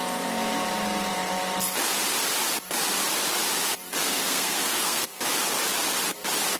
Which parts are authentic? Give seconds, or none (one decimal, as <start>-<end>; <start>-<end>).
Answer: 0.0-4.0; 5.2-6.6